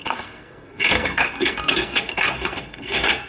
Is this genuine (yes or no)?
no